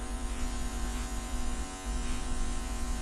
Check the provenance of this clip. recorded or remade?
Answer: remade